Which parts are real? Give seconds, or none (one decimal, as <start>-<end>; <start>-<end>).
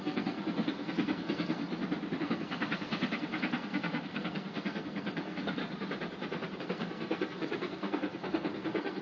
1.6-2.2; 5.6-6.6